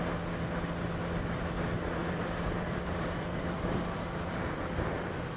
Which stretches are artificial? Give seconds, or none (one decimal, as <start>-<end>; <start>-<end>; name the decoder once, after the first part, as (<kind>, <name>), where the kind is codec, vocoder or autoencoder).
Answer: 2.0-5.4 (vocoder, BigVGAN v2)